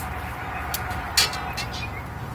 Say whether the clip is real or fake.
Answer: real